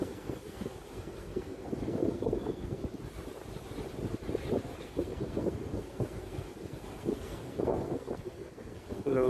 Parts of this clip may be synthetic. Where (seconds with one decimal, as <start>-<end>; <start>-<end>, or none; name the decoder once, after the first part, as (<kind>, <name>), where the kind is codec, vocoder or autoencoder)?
0.0-2.8 (codec, SNAC); 4.6-9.3